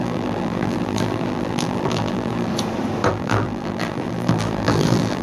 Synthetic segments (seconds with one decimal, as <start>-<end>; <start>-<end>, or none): 0.0-2.5; 3.1-5.2